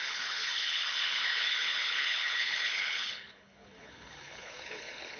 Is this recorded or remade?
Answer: remade